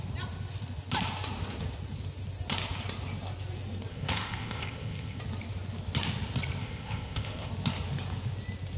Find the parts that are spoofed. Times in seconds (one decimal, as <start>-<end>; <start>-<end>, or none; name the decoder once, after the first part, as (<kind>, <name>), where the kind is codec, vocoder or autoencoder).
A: 3.9-5.2 (codec, ZipCodec); 6.6-7.5